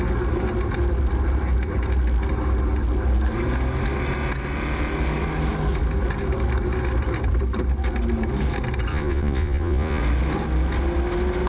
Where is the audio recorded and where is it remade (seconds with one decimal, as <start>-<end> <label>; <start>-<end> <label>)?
0.0-8.9 recorded; 8.9-10.0 remade; 10.0-11.5 recorded